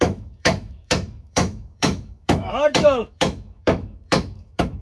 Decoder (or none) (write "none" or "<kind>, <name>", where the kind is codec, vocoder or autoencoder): autoencoder, DAC-VAE